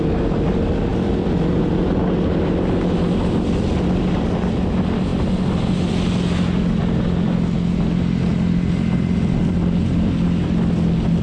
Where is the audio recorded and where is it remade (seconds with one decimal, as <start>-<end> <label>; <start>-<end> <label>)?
0.0-11.2 recorded